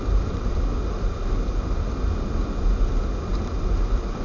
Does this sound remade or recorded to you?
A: remade